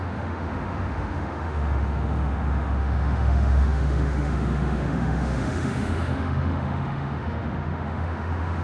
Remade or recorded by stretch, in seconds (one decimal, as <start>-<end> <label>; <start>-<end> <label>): 0.0-8.6 remade